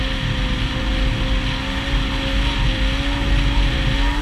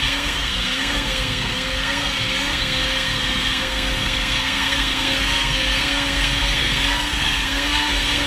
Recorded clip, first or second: first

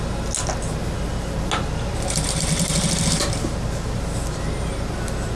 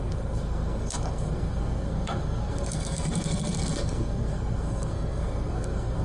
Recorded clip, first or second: first